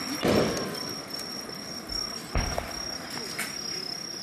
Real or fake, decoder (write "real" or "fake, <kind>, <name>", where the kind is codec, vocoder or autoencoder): real